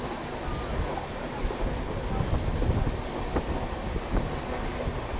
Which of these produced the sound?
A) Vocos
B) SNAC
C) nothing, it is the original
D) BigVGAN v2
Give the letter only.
C